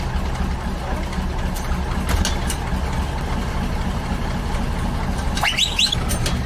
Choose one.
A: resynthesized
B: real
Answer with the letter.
B